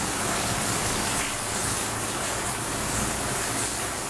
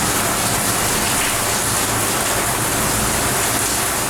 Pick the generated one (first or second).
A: first